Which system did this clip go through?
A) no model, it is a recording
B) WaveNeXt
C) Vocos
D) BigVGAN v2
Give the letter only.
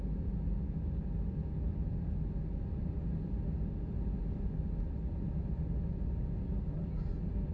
A